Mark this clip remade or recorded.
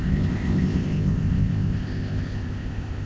remade